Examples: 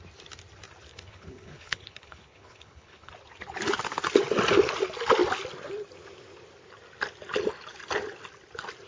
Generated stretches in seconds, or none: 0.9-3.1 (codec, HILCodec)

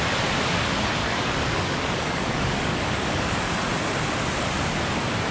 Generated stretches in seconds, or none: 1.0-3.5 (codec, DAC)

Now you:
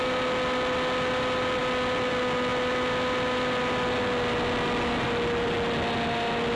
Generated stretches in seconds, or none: none